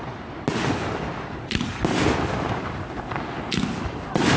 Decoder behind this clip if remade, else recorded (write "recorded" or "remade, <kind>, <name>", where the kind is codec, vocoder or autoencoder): recorded